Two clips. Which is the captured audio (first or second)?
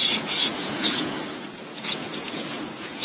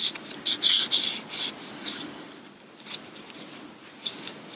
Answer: second